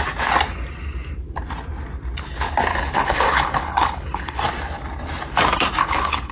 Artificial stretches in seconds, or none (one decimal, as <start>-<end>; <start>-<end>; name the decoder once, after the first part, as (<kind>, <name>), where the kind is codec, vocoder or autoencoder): 2.7-4.4 (codec, HILCodec); 5.8-6.3